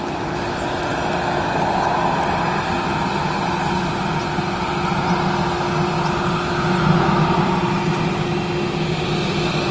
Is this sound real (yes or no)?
yes